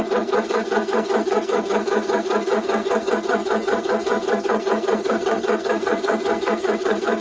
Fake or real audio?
fake